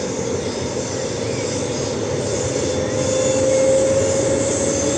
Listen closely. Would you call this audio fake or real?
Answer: real